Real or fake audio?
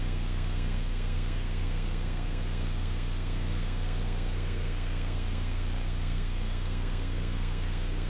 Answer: fake